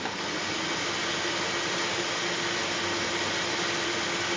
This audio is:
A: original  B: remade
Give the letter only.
A